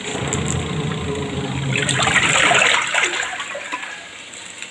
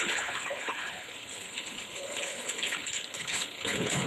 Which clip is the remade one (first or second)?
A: second